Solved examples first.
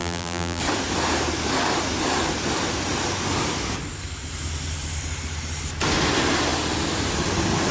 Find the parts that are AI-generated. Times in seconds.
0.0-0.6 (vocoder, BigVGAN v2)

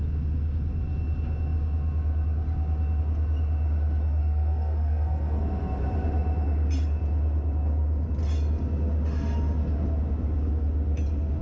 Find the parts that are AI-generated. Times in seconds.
4.2-5.4 (codec, SNAC)

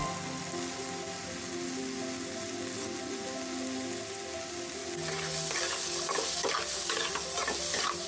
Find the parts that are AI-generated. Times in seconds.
none

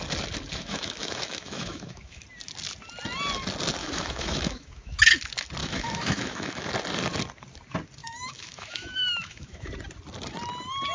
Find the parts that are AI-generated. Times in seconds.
0.5-2.2 (autoencoder, DAC-VAE); 3.8-5.0; 5.6-6.7; 8.0-9.7

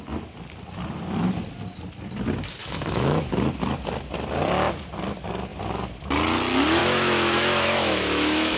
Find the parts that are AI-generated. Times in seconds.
2.6-3.3 (autoencoder, DAC-VAE); 6.8-8.6

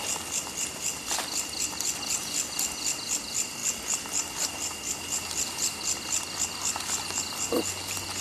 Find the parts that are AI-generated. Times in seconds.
none

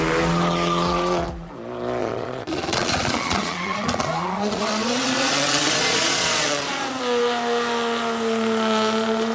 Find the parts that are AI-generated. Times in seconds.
2.0-7.0 (vocoder, Vocos)